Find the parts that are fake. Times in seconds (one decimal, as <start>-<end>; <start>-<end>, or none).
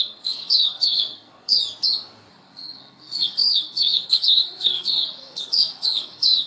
0.0-1.6; 2.3-6.5